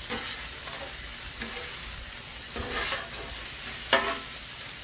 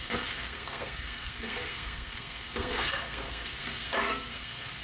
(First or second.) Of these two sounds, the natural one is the first